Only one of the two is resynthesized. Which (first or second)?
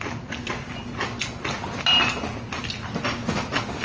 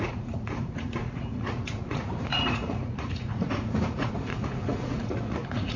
second